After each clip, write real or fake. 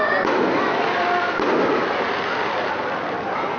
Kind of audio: real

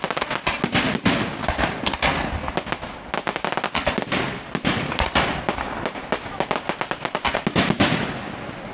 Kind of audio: real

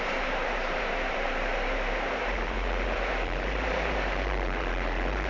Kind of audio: fake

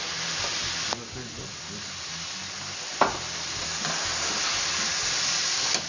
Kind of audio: real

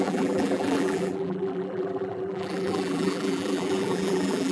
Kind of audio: fake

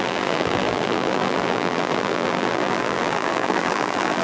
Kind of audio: fake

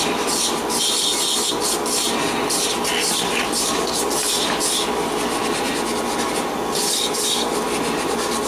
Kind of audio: real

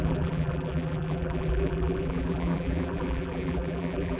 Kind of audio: fake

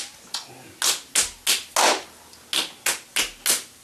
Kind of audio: real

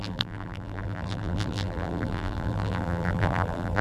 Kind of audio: fake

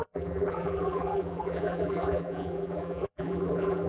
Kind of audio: fake